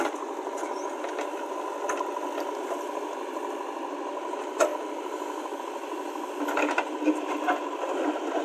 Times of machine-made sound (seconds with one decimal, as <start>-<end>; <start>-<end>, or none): none